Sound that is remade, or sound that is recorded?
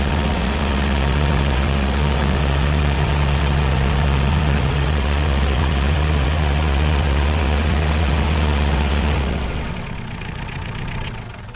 remade